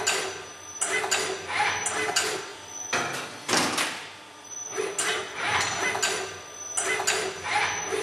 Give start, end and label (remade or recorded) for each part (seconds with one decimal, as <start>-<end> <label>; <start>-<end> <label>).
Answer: 0.0-8.0 recorded